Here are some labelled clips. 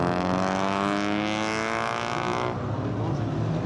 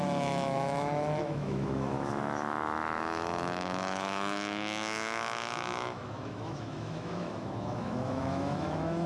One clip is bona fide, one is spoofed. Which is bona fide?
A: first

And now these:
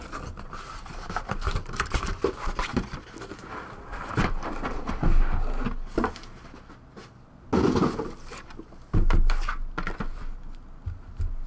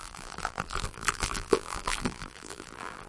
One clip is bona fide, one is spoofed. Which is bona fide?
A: first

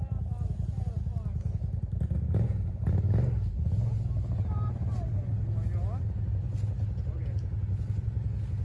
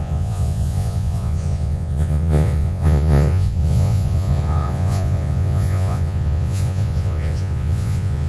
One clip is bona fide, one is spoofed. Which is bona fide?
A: first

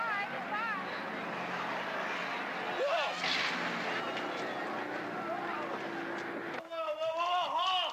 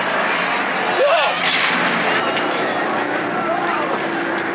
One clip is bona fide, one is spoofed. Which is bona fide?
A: first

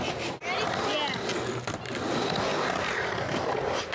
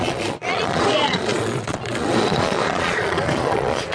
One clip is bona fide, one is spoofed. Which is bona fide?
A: first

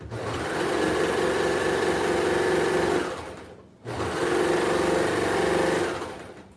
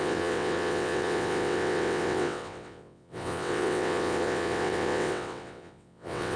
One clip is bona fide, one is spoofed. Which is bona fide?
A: first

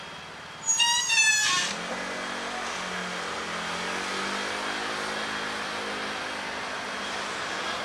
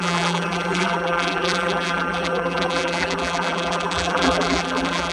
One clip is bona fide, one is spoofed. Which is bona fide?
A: first